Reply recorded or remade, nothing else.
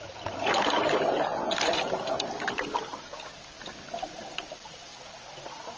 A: recorded